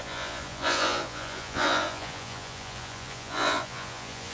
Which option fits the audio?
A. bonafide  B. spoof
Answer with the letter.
B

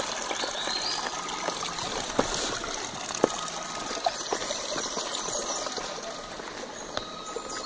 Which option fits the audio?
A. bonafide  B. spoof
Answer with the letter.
A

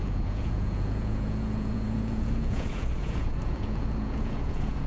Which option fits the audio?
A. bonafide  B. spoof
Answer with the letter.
B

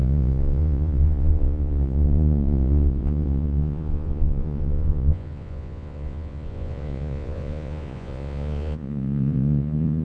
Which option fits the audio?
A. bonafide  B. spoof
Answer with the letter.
B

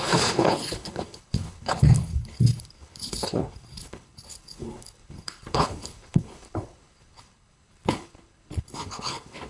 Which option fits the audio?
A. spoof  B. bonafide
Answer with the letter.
A